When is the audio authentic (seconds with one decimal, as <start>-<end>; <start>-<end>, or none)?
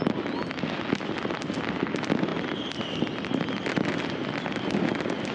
0.0-5.3